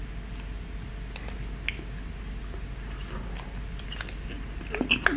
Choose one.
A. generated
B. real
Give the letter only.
B